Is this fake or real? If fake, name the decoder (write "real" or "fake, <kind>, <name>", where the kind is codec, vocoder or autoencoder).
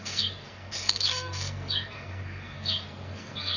fake, codec, SNAC